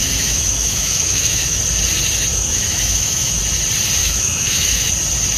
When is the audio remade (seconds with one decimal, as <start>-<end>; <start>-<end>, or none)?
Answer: 0.0-1.6; 2.3-3.4; 4.0-4.9